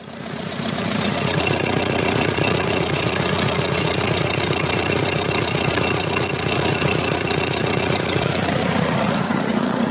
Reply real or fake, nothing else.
fake